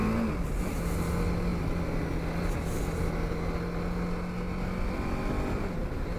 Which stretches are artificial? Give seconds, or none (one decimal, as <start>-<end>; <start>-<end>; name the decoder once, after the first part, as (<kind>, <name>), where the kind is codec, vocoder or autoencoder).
none